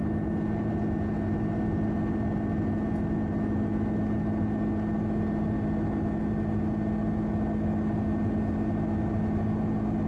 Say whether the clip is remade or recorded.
recorded